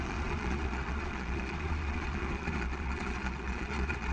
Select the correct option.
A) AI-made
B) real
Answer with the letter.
A